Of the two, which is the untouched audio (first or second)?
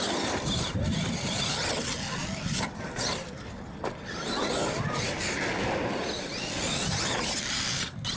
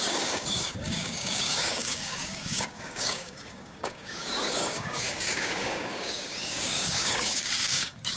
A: first